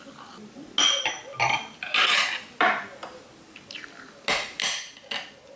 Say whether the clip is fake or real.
real